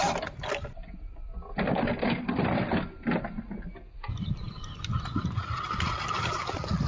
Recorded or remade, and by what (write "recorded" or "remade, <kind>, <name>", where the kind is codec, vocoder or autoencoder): recorded